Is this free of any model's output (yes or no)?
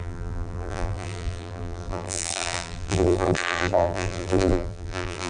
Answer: no